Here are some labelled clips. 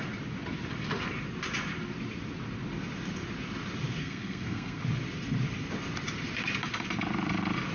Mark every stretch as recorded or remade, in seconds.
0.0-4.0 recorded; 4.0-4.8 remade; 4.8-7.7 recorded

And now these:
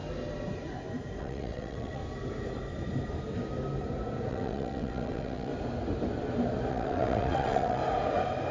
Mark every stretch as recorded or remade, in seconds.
0.0-1.2 recorded; 1.2-2.0 remade; 2.0-4.3 recorded; 4.3-5.5 remade; 5.5-6.7 recorded; 6.7-7.8 remade; 7.8-8.5 recorded